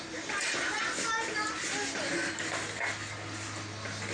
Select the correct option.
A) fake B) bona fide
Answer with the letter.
B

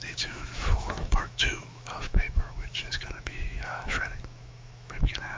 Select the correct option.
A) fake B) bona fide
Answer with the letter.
A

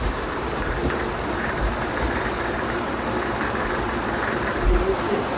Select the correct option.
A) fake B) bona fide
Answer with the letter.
A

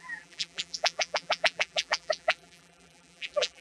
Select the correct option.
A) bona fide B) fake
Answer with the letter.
B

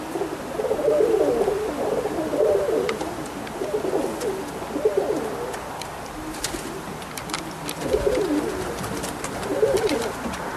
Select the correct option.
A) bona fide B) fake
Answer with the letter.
A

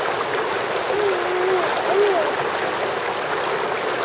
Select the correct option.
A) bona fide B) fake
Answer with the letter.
A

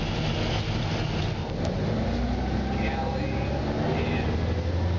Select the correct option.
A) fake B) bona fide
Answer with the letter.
B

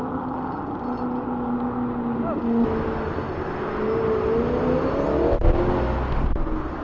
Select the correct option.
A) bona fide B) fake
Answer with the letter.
A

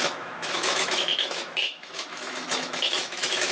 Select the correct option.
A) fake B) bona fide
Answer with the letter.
A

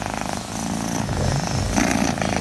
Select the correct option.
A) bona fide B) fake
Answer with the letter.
A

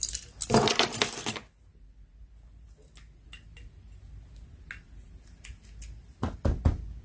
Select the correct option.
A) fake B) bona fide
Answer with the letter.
B